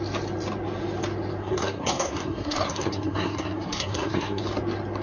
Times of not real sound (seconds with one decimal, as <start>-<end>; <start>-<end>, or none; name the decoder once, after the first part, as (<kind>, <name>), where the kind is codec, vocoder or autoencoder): 1.4-4.4 (codec, SNAC)

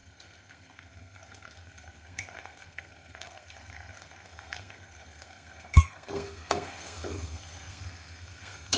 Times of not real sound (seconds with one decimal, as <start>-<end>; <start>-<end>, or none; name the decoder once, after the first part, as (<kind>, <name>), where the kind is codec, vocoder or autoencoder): 0.0-8.8 (codec, SNAC)

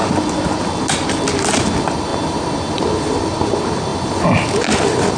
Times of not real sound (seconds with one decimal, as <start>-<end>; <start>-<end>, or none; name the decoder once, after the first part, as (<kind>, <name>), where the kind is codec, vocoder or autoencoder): none

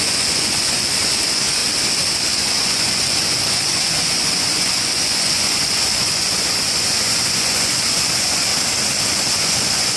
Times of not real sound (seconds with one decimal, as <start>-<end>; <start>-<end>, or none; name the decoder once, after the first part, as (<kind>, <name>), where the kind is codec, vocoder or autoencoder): 0.0-1.6 (vocoder, Vocos); 2.3-8.5; 9.1-10.0

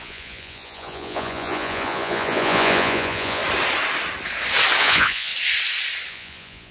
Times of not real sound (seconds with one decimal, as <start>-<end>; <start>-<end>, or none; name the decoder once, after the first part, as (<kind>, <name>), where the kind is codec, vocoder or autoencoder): 0.0-3.4 (vocoder, Vocos); 4.8-5.3; 6.1-6.7